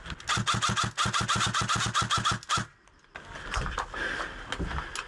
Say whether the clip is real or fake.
real